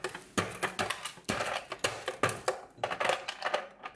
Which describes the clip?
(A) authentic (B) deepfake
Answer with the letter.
A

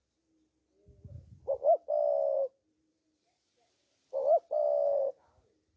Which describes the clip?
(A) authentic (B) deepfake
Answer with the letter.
A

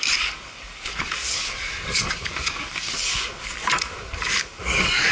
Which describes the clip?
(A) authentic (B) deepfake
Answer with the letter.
B